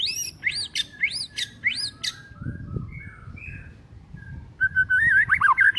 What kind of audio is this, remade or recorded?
recorded